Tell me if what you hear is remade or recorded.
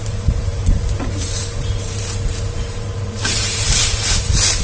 remade